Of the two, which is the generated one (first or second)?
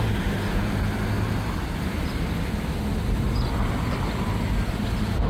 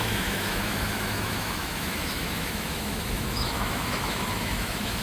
second